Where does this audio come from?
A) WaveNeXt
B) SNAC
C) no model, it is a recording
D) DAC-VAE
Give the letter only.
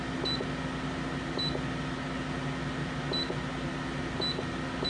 C